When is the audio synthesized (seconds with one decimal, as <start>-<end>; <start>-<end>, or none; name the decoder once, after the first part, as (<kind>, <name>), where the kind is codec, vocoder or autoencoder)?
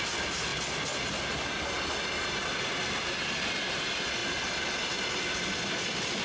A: none